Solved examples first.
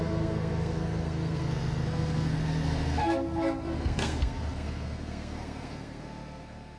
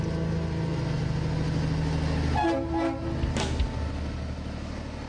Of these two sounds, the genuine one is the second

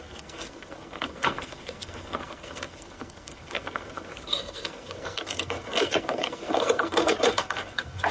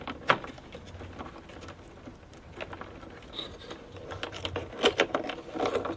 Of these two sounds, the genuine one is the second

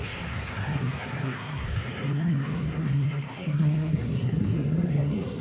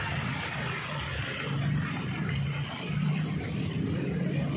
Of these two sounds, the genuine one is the second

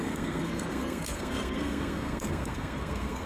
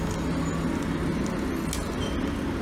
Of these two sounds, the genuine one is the second